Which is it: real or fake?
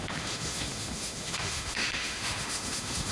fake